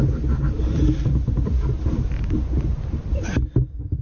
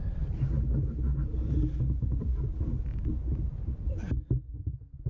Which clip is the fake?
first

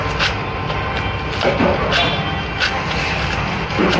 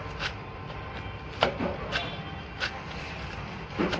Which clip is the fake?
second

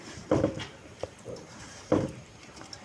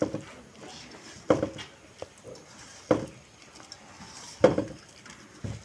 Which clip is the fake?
first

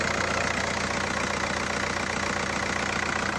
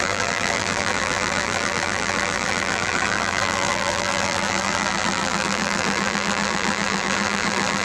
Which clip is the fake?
second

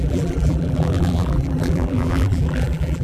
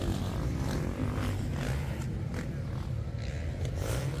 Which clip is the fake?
first